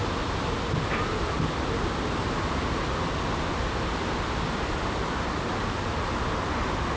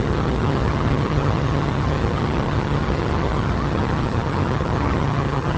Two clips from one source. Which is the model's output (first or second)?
second